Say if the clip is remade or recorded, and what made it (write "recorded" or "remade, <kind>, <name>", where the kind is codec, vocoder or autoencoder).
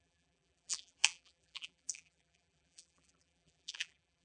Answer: remade, vocoder, BigVGAN v2